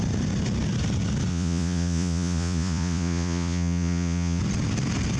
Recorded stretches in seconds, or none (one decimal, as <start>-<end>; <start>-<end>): 0.0-1.3; 4.4-5.2